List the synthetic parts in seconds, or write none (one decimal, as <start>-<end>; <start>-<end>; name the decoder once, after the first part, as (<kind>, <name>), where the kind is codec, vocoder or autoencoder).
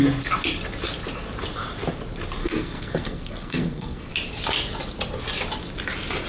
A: 2.4-4.1 (codec, SNAC)